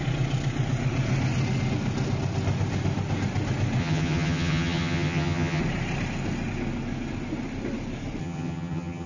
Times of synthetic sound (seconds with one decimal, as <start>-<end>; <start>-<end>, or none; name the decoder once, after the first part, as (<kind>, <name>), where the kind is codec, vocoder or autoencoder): 3.8-5.6 (vocoder, HiFi-GAN); 8.2-9.1